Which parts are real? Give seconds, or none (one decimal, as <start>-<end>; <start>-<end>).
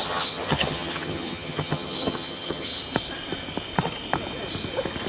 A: 2.7-5.1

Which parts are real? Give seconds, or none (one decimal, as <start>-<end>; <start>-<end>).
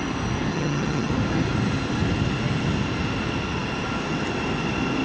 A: 0.0-0.5; 1.1-5.0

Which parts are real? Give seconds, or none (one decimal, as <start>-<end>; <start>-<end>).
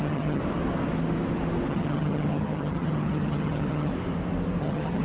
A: 0.4-1.7; 3.9-4.6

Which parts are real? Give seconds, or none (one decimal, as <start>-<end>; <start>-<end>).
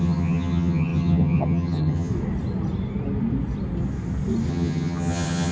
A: 2.1-4.5